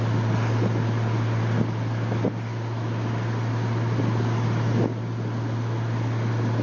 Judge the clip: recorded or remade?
recorded